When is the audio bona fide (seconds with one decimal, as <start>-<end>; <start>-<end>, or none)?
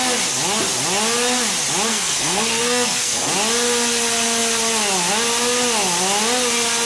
0.0-1.9; 3.3-6.9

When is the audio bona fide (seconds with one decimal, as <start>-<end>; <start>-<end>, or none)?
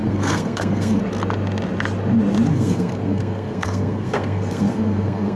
1.0-2.5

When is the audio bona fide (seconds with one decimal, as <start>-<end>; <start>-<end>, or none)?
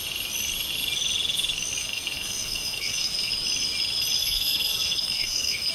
0.0-1.8; 3.3-4.2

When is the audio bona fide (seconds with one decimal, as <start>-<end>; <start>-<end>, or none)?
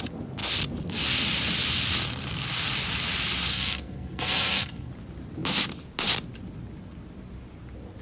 0.0-3.5; 4.9-8.0